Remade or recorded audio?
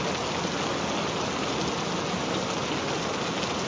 recorded